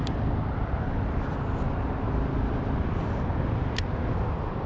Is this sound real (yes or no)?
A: yes